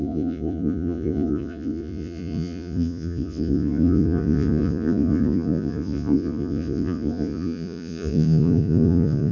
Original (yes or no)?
no